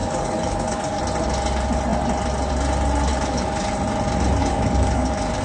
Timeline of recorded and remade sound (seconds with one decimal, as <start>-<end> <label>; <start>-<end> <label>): 0.0-1.0 remade; 1.0-3.1 recorded; 3.1-3.7 remade; 3.7-4.4 recorded; 4.4-5.4 remade